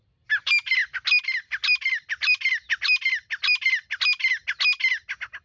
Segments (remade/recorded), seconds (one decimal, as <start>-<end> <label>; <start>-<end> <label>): 0.0-5.4 recorded